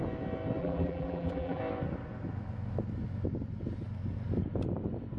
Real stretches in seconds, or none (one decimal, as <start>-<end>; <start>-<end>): 0.0-0.6; 1.6-5.2